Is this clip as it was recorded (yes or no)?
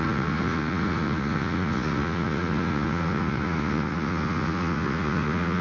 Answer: no